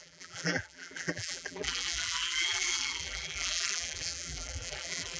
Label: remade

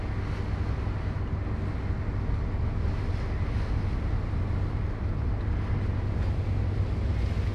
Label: recorded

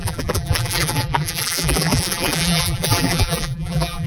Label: remade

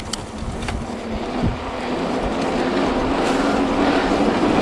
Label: recorded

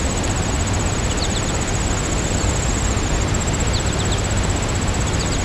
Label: recorded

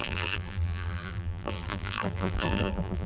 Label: remade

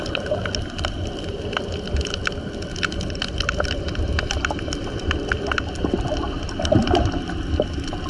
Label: recorded